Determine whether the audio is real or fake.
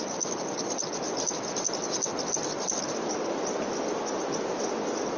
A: real